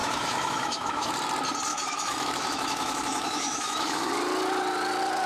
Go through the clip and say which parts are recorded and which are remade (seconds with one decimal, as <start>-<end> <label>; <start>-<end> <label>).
0.0-1.1 remade; 1.1-1.7 recorded; 1.7-4.1 remade; 4.1-5.3 recorded